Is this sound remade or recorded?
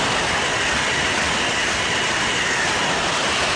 recorded